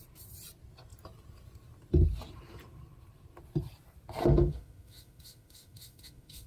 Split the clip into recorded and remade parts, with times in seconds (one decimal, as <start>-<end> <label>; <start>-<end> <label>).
0.0-4.2 recorded; 4.2-6.5 remade